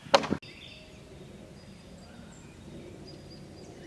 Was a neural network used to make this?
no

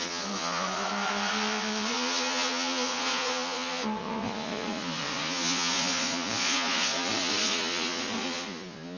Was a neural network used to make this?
yes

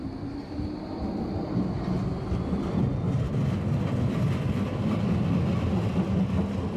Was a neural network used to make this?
no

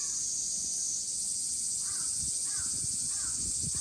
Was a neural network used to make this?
yes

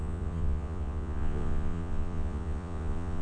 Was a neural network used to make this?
yes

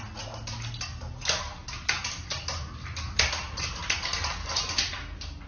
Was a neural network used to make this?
no